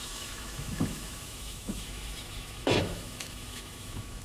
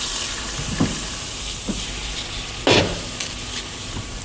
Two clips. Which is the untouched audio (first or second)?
second